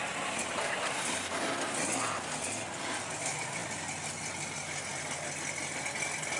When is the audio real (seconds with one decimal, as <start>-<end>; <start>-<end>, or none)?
0.0-6.4